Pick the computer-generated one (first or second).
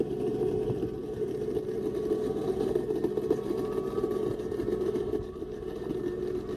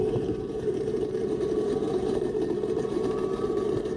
second